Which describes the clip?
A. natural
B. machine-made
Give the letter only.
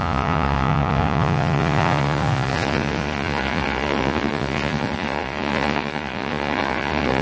B